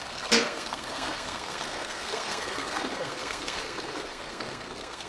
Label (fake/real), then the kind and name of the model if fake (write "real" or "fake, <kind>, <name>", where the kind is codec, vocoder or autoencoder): fake, codec, SNAC